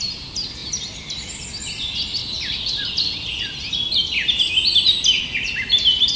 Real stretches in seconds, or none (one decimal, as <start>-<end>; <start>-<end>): 0.0-6.2